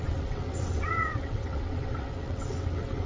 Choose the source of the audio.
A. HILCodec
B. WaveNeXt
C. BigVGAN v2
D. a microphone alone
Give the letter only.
B